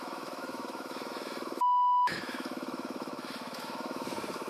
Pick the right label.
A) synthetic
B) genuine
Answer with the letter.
A